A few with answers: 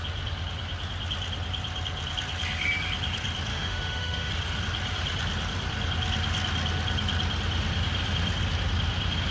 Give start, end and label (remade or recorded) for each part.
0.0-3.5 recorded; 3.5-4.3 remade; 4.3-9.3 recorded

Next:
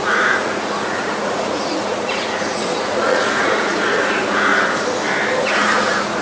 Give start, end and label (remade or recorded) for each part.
0.0-4.5 remade; 4.5-5.4 recorded; 5.4-6.2 remade

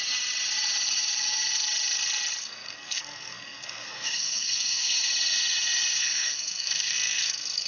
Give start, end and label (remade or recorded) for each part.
0.0-2.4 recorded; 2.4-4.9 remade; 4.9-6.0 recorded; 6.0-7.7 remade

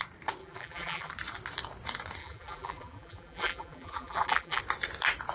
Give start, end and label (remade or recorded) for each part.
0.0-0.4 recorded; 0.4-1.1 remade; 1.1-2.2 recorded; 2.2-4.6 remade; 4.6-5.3 recorded

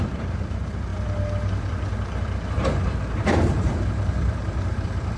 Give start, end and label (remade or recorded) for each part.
0.0-0.9 remade; 0.9-1.5 recorded; 1.5-5.2 remade

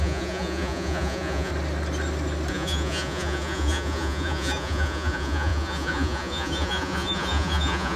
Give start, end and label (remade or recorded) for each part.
0.0-1.5 remade; 1.5-2.5 recorded; 2.5-8.0 remade